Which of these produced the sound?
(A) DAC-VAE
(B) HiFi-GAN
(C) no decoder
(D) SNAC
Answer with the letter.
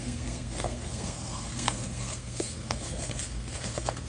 D